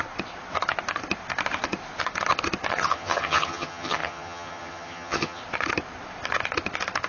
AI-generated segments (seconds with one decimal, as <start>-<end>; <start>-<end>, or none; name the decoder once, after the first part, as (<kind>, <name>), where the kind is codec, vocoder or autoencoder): 2.7-5.4 (vocoder, HiFi-GAN)